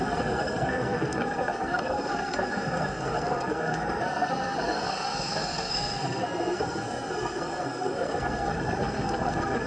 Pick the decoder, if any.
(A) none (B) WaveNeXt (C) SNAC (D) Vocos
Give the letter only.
C